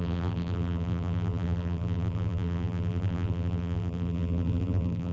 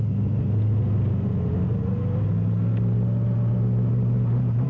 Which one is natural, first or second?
second